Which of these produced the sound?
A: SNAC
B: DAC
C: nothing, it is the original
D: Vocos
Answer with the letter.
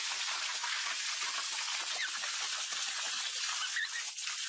C